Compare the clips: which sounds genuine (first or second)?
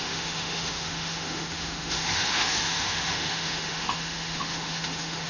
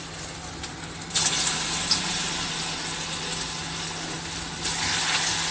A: second